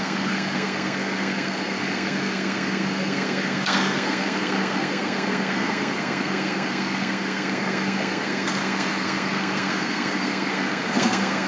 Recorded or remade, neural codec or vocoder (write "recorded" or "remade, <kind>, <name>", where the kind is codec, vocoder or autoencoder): remade, codec, SNAC